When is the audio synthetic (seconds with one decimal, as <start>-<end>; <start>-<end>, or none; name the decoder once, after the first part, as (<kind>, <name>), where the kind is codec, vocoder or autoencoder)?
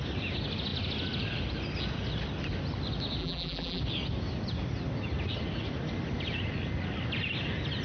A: 3.2-3.8 (vocoder, BigVGAN v2)